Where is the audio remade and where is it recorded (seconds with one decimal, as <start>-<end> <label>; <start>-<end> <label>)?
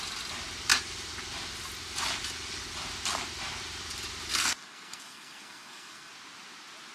0.0-4.3 recorded; 4.3-6.1 remade; 6.1-6.9 recorded